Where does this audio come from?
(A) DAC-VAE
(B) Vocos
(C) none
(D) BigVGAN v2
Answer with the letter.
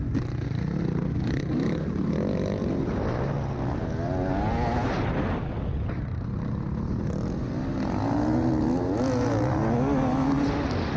C